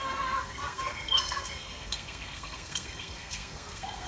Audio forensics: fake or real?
fake